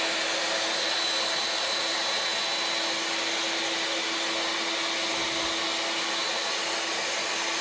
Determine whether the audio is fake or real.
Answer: real